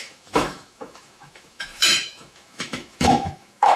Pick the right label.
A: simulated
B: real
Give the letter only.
A